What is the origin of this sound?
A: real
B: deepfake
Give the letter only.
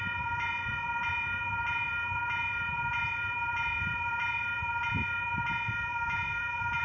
B